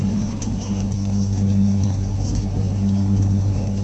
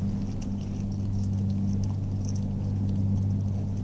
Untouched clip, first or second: second